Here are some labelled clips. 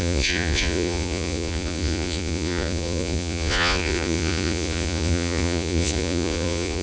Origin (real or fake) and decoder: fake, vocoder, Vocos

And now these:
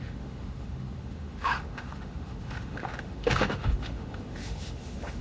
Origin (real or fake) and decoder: fake, autoencoder, DAC-VAE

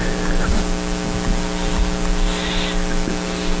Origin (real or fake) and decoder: real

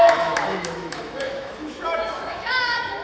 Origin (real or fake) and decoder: fake, autoencoder, DAC-VAE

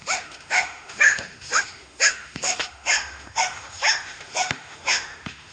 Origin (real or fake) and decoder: fake, autoencoder, DAC-VAE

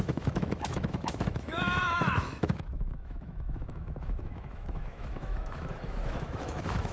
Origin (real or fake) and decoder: fake, autoencoder, DAC-VAE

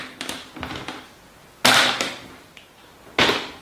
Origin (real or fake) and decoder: real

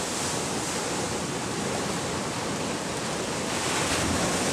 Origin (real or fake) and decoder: real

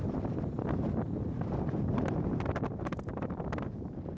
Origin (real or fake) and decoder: real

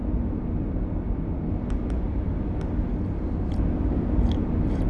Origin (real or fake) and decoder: real